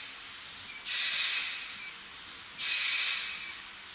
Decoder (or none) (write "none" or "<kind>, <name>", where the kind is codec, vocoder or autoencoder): none